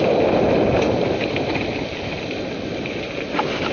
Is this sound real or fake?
real